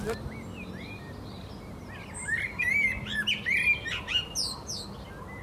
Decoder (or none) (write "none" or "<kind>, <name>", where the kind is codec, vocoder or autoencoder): none